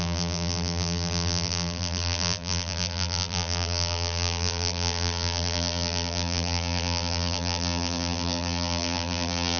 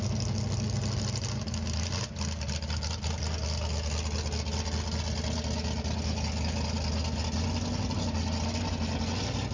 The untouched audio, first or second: second